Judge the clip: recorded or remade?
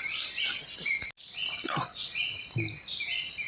recorded